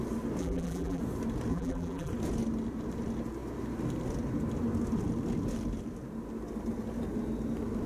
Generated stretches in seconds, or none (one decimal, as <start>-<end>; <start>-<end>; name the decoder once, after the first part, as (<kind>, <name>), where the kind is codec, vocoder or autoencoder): 0.4-1.0 (vocoder, BigVGAN v2); 1.5-2.1